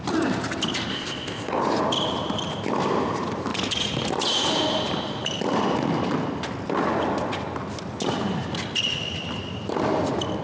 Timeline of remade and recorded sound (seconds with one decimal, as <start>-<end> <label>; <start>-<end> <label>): 0.0-0.9 recorded; 0.9-1.6 remade; 1.6-10.4 recorded